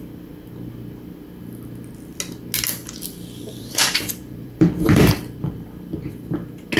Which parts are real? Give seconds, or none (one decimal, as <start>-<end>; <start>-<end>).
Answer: 0.0-2.8; 5.9-6.8